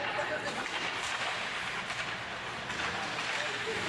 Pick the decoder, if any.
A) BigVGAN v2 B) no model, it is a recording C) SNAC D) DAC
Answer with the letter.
B